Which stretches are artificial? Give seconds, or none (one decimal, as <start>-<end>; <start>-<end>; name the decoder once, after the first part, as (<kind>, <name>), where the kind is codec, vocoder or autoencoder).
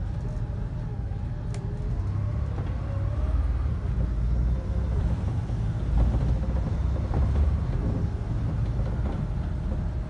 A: none